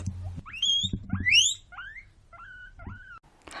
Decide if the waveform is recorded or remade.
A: recorded